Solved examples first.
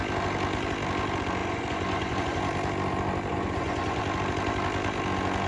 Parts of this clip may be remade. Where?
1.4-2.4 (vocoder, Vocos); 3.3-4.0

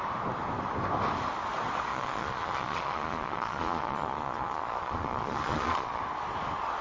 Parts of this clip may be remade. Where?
1.9-6.0 (vocoder, Vocos)